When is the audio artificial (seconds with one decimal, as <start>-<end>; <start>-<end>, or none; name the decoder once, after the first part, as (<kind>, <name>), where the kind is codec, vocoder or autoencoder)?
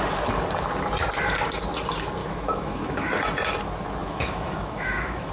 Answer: 2.2-3.1 (autoencoder, DAC-VAE); 4.0-5.3